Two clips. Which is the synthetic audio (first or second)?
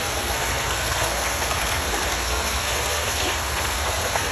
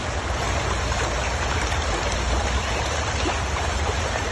first